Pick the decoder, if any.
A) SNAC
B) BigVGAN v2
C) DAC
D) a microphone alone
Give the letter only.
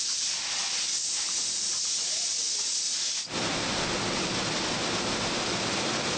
D